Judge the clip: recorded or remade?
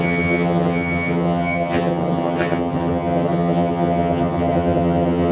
remade